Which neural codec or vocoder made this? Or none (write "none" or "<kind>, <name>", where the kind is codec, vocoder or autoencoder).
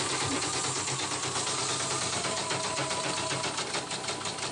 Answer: none